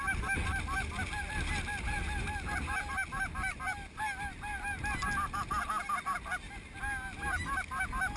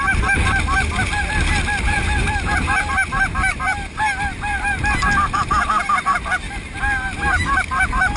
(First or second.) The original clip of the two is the first